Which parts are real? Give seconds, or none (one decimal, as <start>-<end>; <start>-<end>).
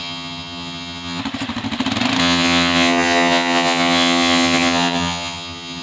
1.2-2.2